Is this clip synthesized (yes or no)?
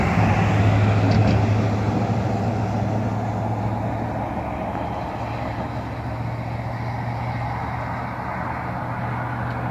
no